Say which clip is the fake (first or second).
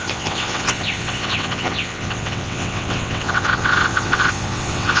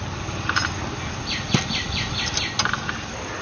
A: first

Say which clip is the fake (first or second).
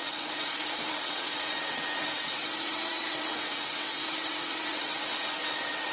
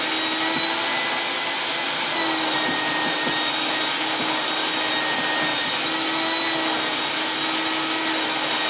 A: first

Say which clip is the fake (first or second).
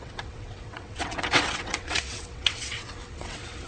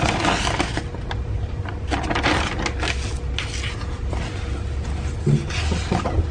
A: first